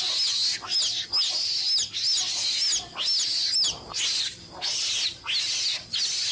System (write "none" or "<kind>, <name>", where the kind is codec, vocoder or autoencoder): none